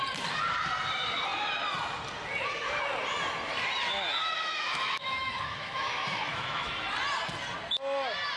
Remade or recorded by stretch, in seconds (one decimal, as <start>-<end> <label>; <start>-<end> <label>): 0.0-4.2 recorded; 4.2-6.7 remade; 6.7-8.4 recorded